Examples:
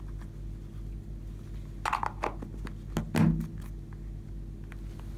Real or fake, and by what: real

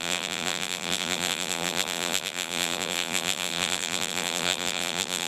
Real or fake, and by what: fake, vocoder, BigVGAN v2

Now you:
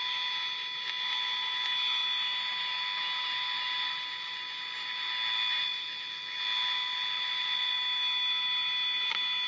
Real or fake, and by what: real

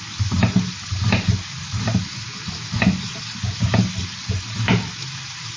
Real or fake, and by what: real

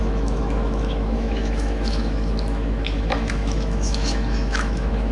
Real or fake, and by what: fake, autoencoder, DAC-VAE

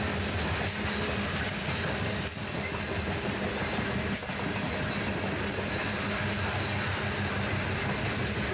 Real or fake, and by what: real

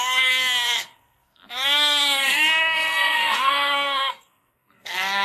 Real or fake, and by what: fake, codec, SNAC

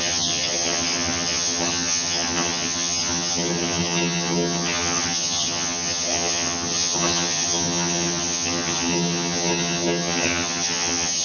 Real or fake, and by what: fake, vocoder, HiFi-GAN